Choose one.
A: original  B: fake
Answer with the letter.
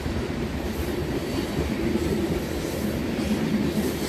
A